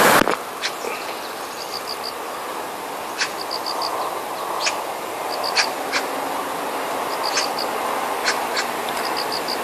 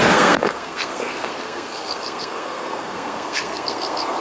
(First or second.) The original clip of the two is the first